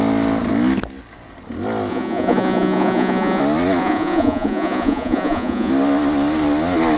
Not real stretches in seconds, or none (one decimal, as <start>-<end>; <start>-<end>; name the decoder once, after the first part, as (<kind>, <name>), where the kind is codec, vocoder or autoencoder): 1.9-3.4 (vocoder, Vocos); 3.8-5.7